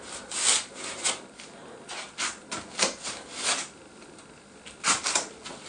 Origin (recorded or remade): recorded